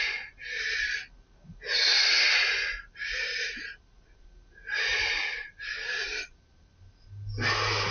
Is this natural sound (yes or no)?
yes